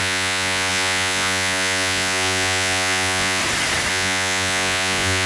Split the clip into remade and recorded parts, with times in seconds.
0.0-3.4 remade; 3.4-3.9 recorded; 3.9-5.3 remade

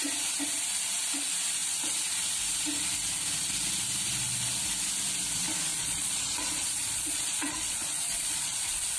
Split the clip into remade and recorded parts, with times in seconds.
0.0-5.7 recorded; 5.7-9.0 remade

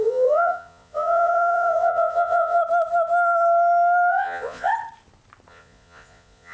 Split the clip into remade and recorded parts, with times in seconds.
0.0-2.6 remade; 2.6-4.1 recorded; 4.1-4.7 remade; 4.7-5.5 recorded; 5.5-6.5 remade